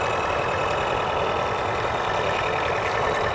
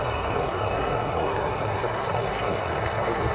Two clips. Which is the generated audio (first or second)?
second